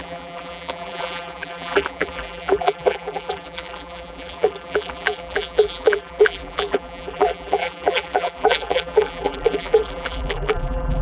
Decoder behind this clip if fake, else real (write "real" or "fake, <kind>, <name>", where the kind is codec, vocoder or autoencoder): fake, vocoder, BigVGAN v2